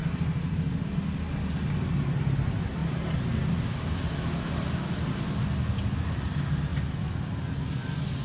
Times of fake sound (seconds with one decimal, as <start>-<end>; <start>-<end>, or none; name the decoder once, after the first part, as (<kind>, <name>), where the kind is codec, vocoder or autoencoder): none